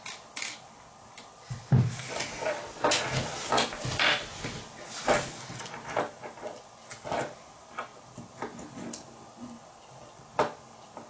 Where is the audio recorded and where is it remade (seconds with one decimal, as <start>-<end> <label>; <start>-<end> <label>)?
0.0-11.1 recorded